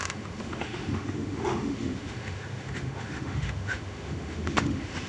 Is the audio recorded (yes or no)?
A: no